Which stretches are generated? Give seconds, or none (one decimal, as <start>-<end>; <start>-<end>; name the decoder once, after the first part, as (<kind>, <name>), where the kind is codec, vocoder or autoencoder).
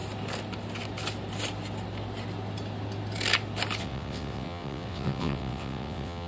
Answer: 3.8-6.3 (vocoder, WaveNeXt)